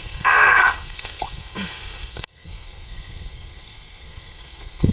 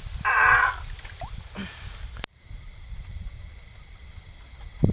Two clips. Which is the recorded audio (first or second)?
second